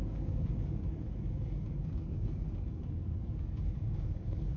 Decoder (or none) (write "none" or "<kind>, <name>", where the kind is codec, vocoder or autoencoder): codec, DAC